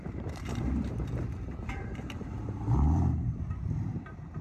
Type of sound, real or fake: fake